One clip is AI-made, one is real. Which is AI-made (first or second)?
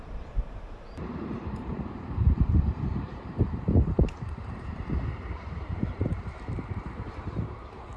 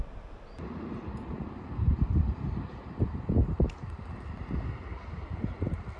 first